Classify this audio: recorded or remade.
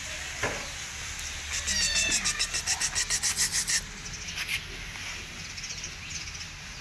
recorded